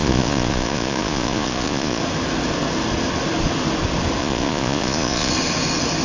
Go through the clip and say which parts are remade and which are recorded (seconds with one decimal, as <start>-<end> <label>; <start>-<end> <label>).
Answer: 0.0-2.0 remade; 2.0-4.2 recorded; 4.2-5.3 remade; 5.3-6.0 recorded